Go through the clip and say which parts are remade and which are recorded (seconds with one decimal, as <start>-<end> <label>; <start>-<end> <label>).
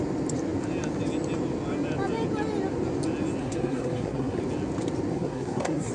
0.0-3.4 recorded; 3.4-4.4 remade; 4.4-5.1 recorded; 5.1-5.9 remade